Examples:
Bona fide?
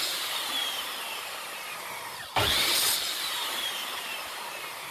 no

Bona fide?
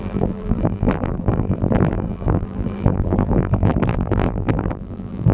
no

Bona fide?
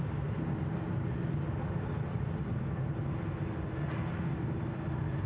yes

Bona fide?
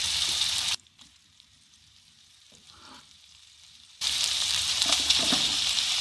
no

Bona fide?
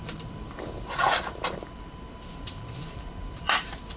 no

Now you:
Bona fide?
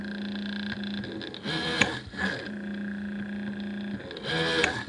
yes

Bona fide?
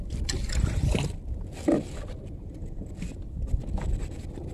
no